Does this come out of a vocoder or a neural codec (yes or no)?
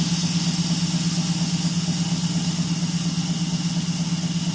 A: no